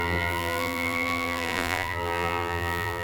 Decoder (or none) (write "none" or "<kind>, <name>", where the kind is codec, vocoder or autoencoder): vocoder, BigVGAN v2